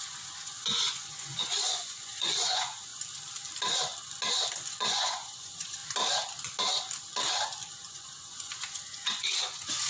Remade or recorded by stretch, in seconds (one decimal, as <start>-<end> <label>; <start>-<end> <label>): 0.0-2.9 remade; 2.9-4.7 recorded; 4.7-5.8 remade; 5.8-7.9 recorded; 7.9-9.9 remade